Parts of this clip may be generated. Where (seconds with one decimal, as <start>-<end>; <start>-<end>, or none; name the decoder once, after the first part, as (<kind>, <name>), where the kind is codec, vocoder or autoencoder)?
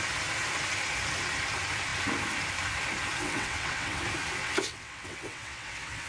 3.2-4.0 (vocoder, WaveNeXt); 4.4-6.1